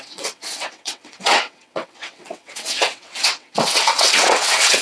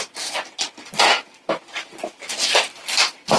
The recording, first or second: second